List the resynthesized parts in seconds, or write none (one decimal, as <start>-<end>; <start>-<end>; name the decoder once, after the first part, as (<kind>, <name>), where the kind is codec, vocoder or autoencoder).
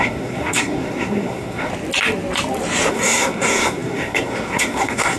0.0-1.7 (codec, SNAC); 2.9-5.2